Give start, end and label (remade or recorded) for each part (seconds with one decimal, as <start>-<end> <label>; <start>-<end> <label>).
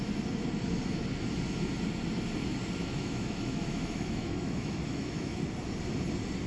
0.0-2.8 recorded; 2.8-5.4 remade; 5.4-6.5 recorded